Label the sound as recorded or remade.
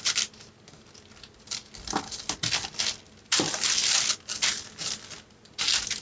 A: recorded